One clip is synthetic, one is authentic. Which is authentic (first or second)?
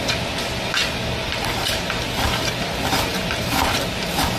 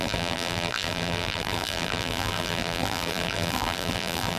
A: first